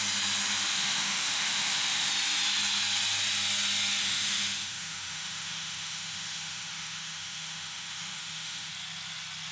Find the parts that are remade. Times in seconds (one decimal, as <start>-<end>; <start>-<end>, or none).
0.7-2.1; 4.0-8.7